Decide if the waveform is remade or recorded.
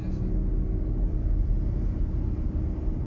recorded